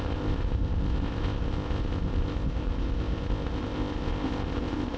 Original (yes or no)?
no